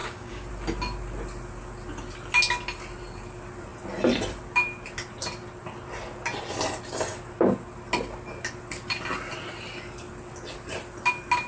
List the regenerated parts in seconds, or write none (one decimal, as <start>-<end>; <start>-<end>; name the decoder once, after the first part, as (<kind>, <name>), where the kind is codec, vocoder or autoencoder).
0.0-0.5 (codec, DAC)

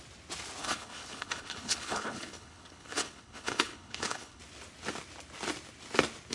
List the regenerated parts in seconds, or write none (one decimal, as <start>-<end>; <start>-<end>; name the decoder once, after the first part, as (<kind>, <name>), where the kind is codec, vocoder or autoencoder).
0.6-4.4 (codec, HILCodec)

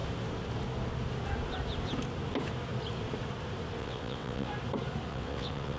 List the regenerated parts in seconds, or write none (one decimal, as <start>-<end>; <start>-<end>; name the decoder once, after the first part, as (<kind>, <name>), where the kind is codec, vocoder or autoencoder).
3.8-4.5 (vocoder, WaveNeXt); 5.1-5.8

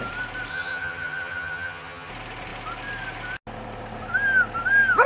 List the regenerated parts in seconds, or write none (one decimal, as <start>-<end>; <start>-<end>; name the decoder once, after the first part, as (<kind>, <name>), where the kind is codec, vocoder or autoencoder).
0.5-2.1 (vocoder, HiFi-GAN)

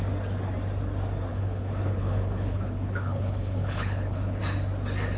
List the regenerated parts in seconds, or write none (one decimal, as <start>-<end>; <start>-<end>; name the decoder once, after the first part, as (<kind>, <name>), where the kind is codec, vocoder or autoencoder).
1.3-4.4 (codec, HILCodec)

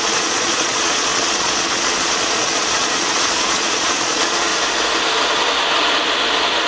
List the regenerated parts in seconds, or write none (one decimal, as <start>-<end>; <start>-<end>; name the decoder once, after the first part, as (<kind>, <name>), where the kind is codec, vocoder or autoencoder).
0.0-4.5 (vocoder, Vocos)